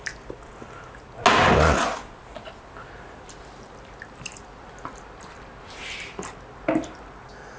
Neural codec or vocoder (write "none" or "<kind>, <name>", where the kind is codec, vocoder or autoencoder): none